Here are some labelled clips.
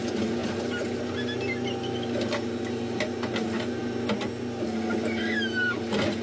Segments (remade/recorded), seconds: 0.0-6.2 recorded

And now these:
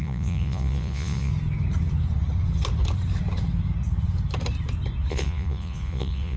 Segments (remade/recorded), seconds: 0.0-1.3 remade; 1.3-5.1 recorded; 5.1-6.4 remade

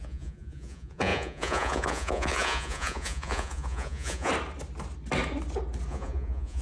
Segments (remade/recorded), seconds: 0.0-4.3 remade; 4.3-5.9 recorded; 5.9-6.6 remade

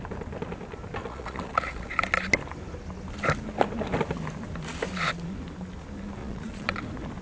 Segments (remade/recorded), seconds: 0.0-1.0 recorded; 1.0-2.0 remade; 2.0-6.2 recorded; 6.2-6.8 remade; 6.8-7.2 recorded

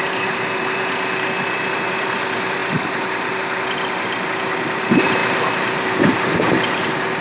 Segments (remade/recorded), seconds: 0.0-7.2 recorded

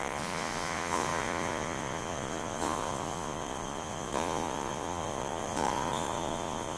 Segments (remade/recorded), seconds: 0.0-6.8 remade

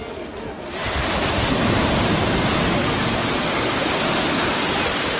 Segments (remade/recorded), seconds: 0.0-5.2 recorded